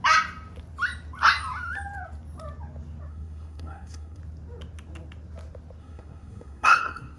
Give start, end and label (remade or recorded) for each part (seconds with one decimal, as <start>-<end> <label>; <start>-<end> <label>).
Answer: 0.0-3.1 recorded; 3.1-4.2 remade; 4.2-5.8 recorded; 5.8-7.2 remade